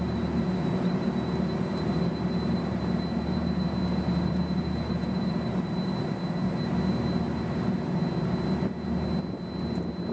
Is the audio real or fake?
real